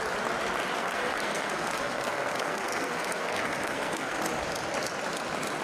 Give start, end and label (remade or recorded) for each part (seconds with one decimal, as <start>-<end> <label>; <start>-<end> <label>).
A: 0.0-0.8 recorded; 0.8-4.2 remade; 4.2-5.6 recorded